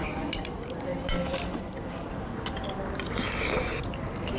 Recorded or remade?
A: recorded